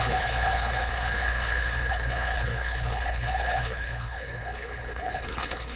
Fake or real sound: fake